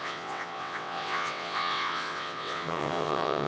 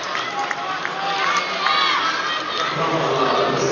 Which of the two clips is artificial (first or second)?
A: first